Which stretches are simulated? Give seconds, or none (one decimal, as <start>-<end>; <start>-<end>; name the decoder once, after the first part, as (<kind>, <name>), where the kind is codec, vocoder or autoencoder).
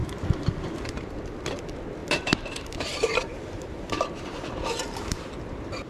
0.0-1.1 (vocoder, BigVGAN v2); 2.0-5.5